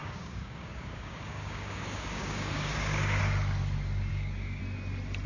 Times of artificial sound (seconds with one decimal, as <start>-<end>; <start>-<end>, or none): 0.0-3.2; 4.1-4.6